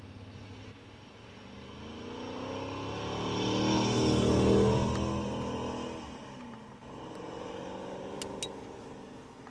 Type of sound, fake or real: real